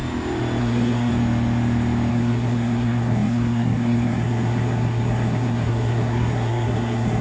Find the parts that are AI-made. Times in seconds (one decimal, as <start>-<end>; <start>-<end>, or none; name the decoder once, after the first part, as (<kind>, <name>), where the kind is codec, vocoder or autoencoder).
0.6-1.1 (codec, SNAC); 2.1-7.2